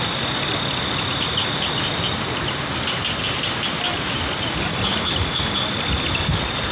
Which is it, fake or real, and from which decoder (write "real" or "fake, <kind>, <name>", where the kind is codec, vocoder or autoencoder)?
real